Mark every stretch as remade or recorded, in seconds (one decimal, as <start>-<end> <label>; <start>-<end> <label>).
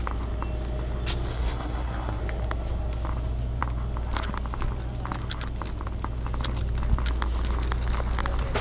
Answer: 0.0-1.3 recorded; 1.3-2.2 remade; 2.2-8.6 recorded